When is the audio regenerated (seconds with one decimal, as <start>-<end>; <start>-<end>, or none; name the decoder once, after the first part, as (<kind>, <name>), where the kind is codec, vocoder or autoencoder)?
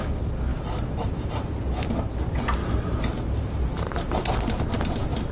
2.6-4.6 (vocoder, BigVGAN v2)